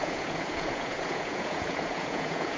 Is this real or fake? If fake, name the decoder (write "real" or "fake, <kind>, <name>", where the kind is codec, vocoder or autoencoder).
fake, vocoder, Vocos